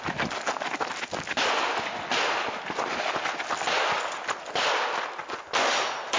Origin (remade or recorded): recorded